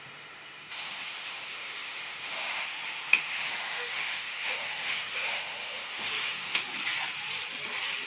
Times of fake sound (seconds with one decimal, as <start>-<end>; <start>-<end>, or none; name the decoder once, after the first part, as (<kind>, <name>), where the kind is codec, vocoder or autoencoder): 0.0-6.6 (autoencoder, DAC-VAE)